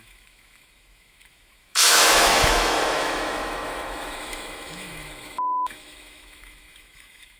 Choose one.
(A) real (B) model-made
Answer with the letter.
B